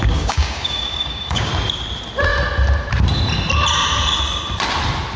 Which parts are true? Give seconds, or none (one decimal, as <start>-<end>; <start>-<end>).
1.5-5.2